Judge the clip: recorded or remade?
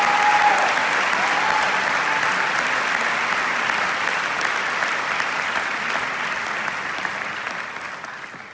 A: recorded